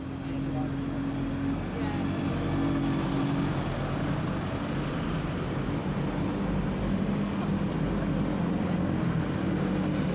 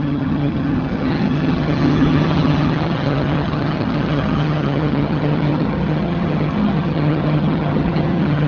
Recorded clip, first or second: first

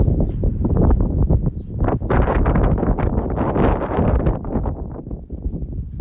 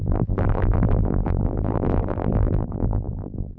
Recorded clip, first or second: first